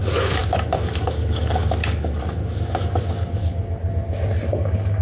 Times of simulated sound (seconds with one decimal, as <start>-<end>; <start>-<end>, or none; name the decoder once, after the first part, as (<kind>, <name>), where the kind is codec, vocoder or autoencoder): 0.0-3.8 (codec, DAC); 4.5-5.0